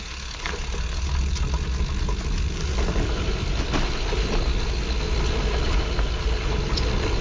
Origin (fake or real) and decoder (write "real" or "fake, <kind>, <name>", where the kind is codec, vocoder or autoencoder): real